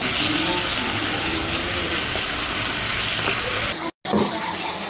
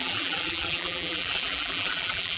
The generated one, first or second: second